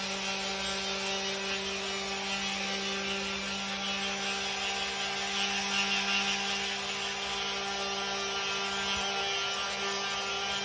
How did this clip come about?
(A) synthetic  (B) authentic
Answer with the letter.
B